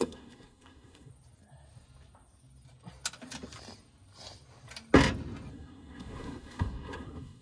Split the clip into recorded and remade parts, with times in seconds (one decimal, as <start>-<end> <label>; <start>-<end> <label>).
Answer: 0.0-1.1 remade; 1.1-5.5 recorded; 5.5-7.4 remade